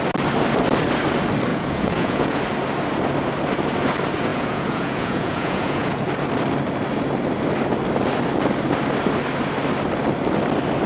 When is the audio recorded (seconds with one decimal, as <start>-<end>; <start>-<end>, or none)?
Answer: 0.0-1.5; 2.4-4.3; 6.0-10.9